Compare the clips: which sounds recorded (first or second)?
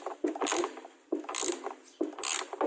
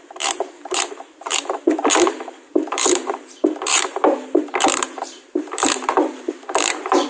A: first